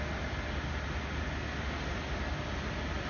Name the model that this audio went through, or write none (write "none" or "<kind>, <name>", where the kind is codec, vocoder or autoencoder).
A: none